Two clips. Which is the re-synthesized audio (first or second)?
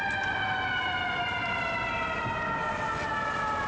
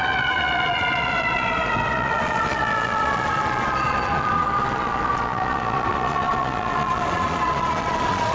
second